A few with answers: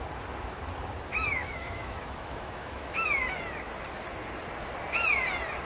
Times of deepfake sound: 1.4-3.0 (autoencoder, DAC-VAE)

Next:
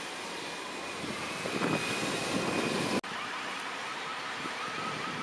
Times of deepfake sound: none

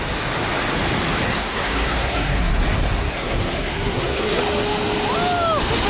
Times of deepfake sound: 1.4-2.5 (codec, SNAC); 3.0-4.4

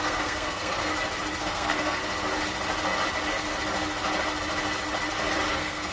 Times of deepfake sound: 0.0-0.9 (codec, SNAC); 1.4-2.0; 5.5-5.9

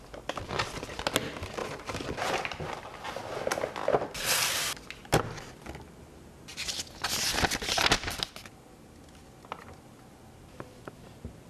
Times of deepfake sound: 1.6-2.6 (vocoder, BigVGAN v2)

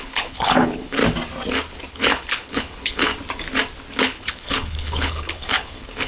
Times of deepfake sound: 0.0-1.0 (codec, HILCodec); 1.9-3.1; 3.9-6.1

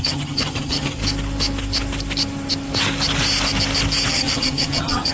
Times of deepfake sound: 0.0-1.0 (vocoder, HiFi-GAN); 4.1-5.1

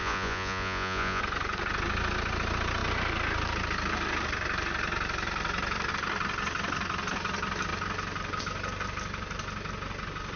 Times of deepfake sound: 0.0-1.2 (vocoder, Vocos)